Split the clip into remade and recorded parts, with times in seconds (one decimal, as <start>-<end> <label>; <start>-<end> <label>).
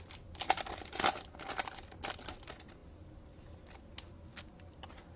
0.0-5.2 recorded